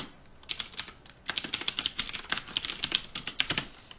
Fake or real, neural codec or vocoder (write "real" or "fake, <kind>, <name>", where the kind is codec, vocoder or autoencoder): real